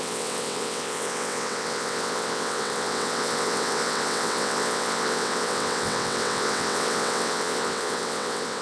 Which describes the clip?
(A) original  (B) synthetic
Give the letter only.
B